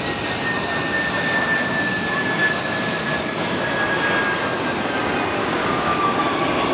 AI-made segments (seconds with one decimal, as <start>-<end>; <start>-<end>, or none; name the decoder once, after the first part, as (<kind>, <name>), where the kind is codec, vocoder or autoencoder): 5.4-6.7 (codec, DAC)